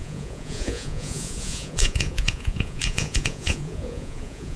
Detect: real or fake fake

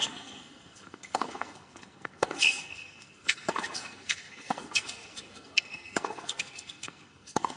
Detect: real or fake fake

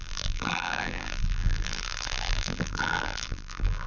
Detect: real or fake fake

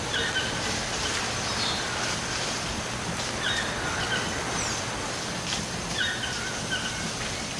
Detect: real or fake real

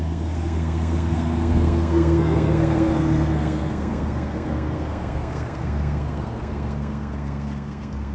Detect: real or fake fake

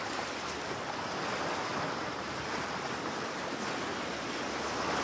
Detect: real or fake real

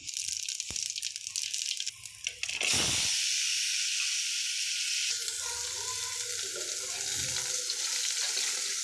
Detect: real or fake real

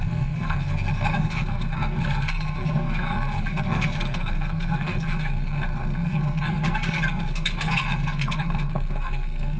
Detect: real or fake fake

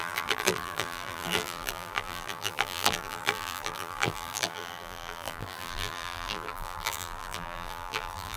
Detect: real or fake fake